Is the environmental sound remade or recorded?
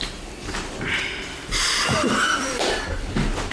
remade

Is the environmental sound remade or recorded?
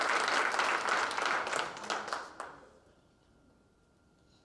recorded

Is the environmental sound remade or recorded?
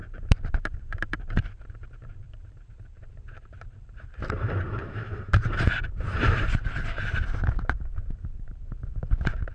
remade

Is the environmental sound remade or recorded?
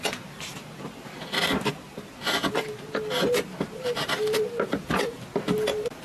remade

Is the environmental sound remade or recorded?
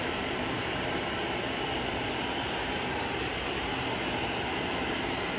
remade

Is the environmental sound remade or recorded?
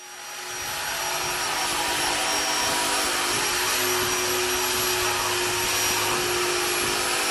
recorded